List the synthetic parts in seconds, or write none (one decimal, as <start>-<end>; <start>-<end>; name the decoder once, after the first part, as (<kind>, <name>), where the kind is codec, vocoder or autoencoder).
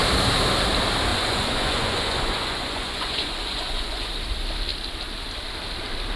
1.1-4.1 (vocoder, Vocos)